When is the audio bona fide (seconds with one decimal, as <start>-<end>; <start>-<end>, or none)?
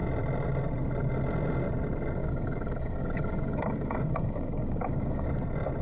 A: 0.0-2.2; 5.3-5.8